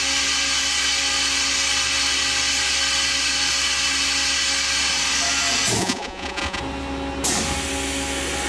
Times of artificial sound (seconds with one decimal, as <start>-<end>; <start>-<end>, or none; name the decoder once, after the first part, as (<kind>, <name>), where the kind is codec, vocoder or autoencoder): 5.8-6.6 (vocoder, Vocos)